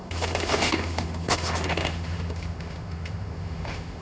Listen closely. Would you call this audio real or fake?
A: fake